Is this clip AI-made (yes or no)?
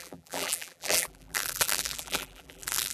yes